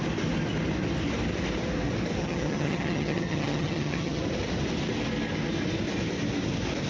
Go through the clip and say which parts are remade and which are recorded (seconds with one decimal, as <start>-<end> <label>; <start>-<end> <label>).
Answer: 0.0-2.2 recorded; 2.2-4.2 remade; 4.2-6.9 recorded